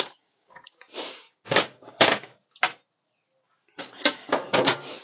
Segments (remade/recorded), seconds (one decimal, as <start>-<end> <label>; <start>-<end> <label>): 0.0-2.3 remade; 2.3-3.8 recorded; 3.8-5.0 remade